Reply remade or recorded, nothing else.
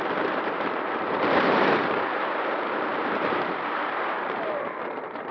remade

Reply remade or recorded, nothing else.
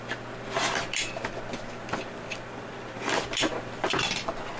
recorded